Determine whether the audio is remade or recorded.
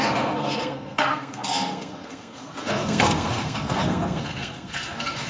remade